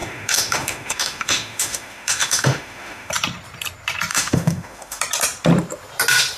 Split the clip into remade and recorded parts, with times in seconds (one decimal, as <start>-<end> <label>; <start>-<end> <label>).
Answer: 0.0-3.1 remade; 3.1-4.1 recorded; 4.1-5.0 remade; 5.0-6.4 recorded